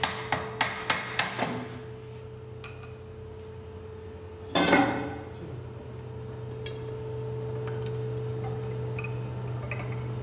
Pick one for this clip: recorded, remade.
recorded